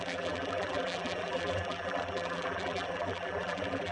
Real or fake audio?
fake